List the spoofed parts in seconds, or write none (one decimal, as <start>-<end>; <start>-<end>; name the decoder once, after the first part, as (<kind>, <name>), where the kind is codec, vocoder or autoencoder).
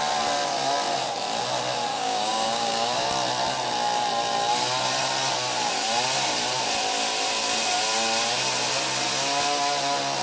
1.9-3.1 (codec, DAC)